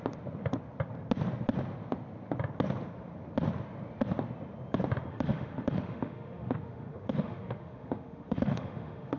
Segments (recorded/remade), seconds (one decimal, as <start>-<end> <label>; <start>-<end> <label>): 0.0-5.1 recorded; 5.1-9.2 remade